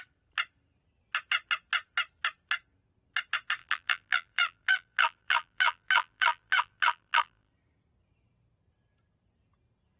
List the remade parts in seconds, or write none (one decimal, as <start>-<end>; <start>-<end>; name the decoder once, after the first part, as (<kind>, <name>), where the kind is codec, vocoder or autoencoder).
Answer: 3.6-7.5 (vocoder, BigVGAN v2)

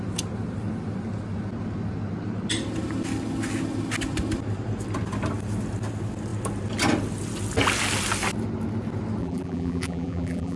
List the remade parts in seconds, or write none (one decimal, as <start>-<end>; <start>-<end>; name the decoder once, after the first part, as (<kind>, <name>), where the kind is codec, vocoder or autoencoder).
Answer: 9.2-10.6 (vocoder, BigVGAN v2)

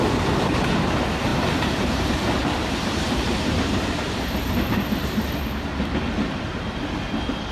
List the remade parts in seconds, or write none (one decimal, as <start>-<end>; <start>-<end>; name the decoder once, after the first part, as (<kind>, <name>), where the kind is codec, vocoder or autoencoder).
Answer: 1.3-4.5 (vocoder, BigVGAN v2)